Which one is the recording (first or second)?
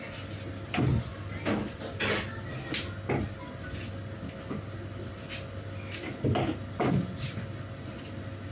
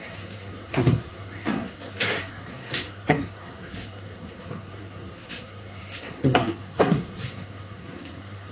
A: first